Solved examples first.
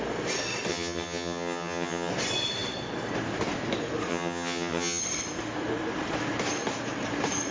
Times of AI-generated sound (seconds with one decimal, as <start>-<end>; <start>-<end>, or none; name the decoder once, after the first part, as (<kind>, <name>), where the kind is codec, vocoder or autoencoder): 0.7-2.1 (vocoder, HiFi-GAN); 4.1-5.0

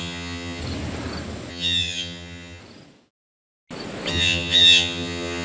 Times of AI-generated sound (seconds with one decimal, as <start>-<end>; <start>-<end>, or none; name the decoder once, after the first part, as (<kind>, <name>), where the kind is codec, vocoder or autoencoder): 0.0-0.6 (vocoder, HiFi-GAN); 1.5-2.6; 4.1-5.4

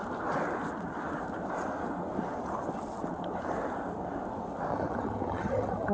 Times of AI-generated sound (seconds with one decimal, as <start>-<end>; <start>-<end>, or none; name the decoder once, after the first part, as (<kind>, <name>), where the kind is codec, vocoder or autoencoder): 4.7-5.9 (vocoder, HiFi-GAN)

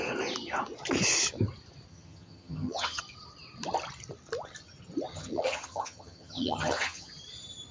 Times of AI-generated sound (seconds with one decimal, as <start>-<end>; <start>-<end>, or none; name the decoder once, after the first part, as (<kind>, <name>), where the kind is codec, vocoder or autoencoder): 1.9-3.0 (vocoder, HiFi-GAN); 5.1-7.1